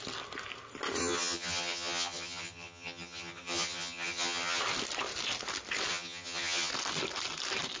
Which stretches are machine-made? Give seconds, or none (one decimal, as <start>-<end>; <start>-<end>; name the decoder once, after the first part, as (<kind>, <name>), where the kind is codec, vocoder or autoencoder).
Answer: 1.0-4.6 (vocoder, HiFi-GAN); 5.9-6.7